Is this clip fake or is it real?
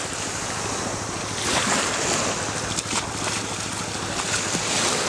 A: real